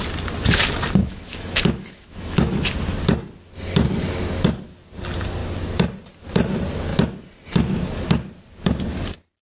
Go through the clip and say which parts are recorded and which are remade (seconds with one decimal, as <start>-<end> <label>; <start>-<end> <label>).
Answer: 0.0-1.0 recorded; 1.0-2.6 remade; 2.6-9.5 recorded